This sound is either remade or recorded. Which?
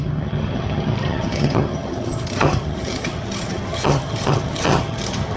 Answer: remade